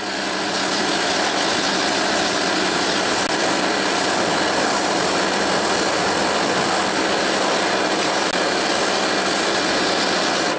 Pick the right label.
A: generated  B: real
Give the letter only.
B